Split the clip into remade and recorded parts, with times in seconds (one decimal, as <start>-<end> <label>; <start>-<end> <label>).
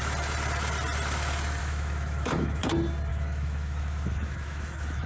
0.0-1.6 recorded; 1.6-2.6 remade; 2.6-3.1 recorded; 3.1-5.1 remade